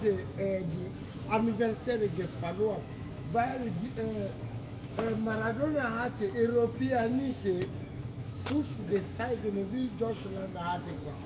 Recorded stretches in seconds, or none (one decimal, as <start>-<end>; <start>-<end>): none